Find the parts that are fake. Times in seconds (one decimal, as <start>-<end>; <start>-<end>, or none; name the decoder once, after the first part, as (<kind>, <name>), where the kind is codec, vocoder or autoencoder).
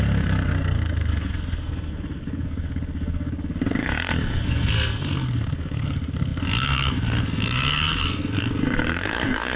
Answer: 0.0-9.6 (codec, SNAC)